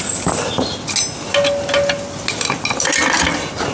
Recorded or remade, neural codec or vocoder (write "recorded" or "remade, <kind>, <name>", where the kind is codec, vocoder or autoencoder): recorded